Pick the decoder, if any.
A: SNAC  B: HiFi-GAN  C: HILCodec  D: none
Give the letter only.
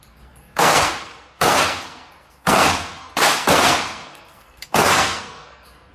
A